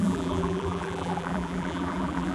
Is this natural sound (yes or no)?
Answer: no